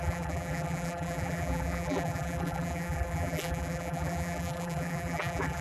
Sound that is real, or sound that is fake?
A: fake